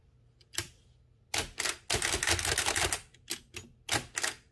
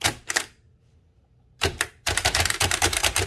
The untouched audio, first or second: first